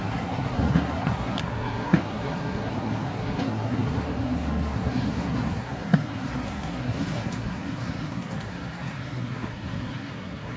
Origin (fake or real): fake